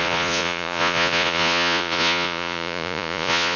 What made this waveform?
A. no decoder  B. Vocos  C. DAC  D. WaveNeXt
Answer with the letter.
B